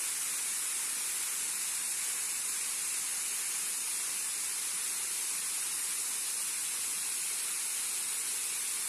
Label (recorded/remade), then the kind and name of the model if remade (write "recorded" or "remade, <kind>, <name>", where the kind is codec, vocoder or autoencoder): recorded